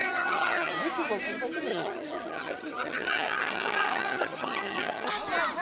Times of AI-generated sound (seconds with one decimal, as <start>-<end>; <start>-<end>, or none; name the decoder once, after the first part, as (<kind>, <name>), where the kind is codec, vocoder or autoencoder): 0.0-0.7 (vocoder, HiFi-GAN); 1.7-5.1